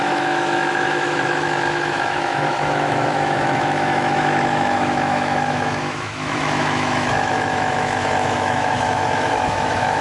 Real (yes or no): no